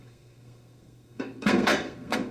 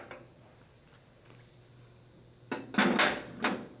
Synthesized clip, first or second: first